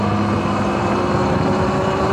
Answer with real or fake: real